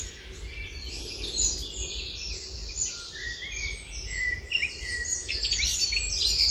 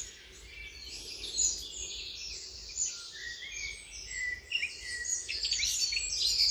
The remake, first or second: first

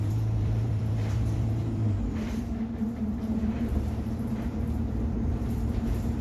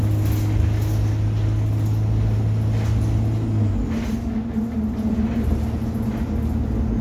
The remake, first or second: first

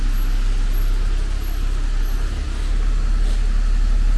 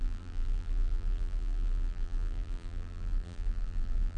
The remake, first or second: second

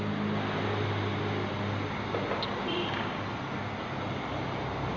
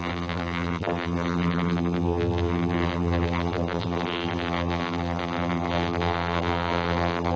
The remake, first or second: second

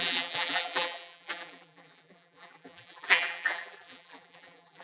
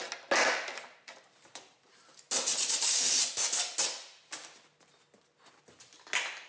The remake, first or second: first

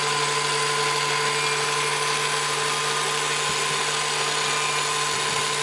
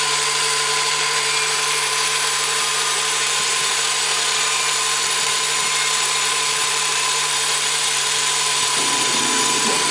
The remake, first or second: second